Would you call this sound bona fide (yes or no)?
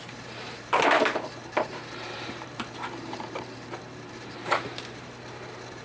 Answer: no